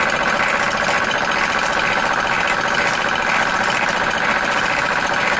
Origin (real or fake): real